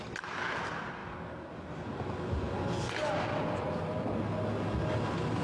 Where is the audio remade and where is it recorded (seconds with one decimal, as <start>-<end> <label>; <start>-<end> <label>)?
0.0-5.4 recorded